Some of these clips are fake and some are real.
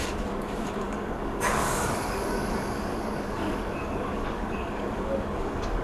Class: fake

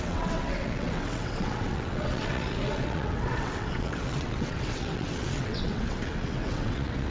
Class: fake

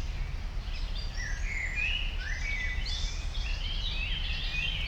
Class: real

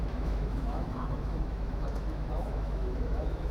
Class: fake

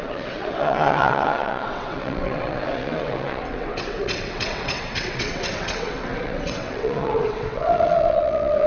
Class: fake